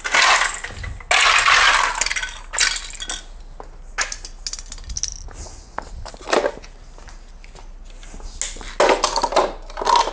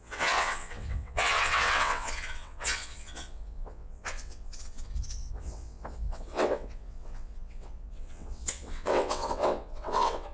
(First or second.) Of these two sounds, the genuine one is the first